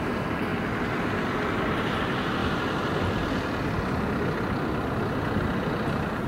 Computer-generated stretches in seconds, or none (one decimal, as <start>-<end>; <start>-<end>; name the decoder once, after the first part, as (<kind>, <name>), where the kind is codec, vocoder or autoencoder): 0.0-0.5 (vocoder, BigVGAN v2); 1.7-2.4